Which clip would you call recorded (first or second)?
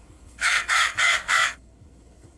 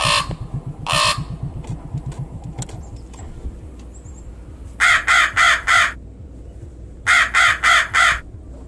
second